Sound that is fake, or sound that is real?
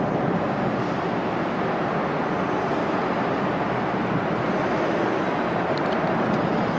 real